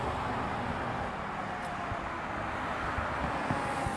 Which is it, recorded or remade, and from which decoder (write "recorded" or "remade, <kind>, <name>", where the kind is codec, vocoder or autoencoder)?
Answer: recorded